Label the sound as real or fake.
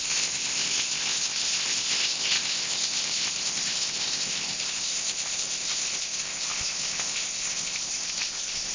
fake